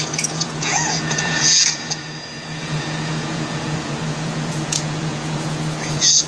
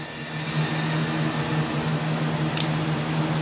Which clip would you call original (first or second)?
second